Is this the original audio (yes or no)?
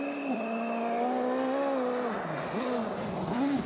yes